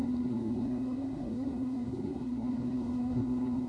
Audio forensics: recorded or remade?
remade